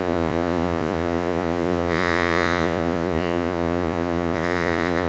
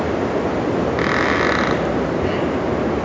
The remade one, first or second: first